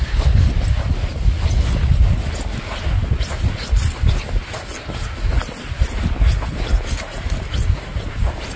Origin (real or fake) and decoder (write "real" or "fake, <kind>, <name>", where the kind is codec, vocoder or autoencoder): real